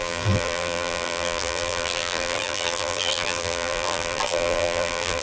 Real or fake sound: fake